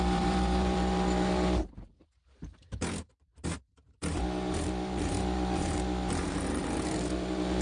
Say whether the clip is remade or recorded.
remade